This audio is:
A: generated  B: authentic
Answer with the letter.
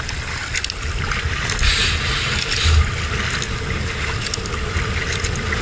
B